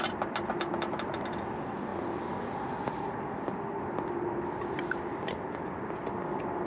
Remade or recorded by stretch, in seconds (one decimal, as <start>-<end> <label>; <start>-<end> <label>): 0.0-6.7 recorded